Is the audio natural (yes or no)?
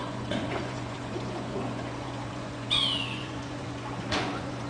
no